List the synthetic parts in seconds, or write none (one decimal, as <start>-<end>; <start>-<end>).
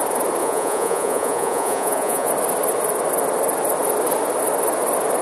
0.4-2.3